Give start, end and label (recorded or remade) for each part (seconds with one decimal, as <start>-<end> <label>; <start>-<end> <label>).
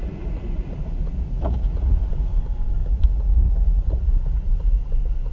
0.0-2.4 remade; 2.4-2.8 recorded; 2.8-4.8 remade; 4.8-5.3 recorded